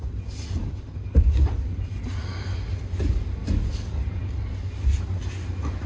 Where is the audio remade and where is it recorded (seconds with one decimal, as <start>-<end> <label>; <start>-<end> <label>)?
0.0-5.9 recorded